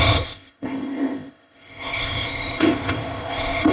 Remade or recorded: remade